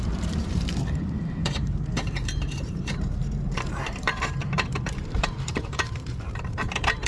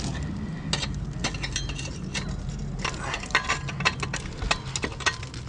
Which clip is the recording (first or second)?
second